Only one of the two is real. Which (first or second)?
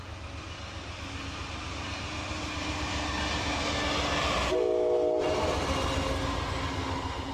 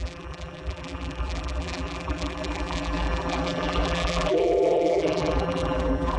first